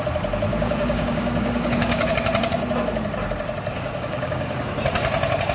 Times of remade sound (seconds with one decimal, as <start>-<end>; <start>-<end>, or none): 0.5-2.1; 3.7-4.6